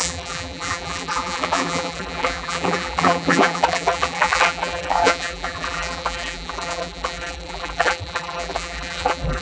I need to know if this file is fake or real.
fake